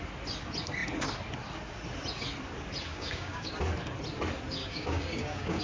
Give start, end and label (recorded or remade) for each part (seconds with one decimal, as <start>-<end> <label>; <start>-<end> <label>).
0.0-2.9 recorded; 2.9-3.5 remade; 3.5-4.6 recorded; 4.6-5.6 remade